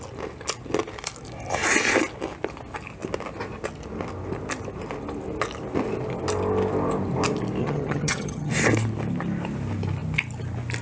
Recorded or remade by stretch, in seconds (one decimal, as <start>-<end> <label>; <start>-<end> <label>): 0.0-7.6 recorded; 7.6-8.5 remade; 8.5-10.8 recorded